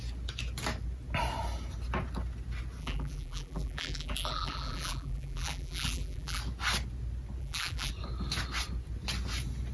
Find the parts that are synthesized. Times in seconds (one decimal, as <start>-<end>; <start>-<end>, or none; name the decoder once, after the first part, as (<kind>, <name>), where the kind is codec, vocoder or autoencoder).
2.8-6.4 (vocoder, BigVGAN v2); 7.4-7.9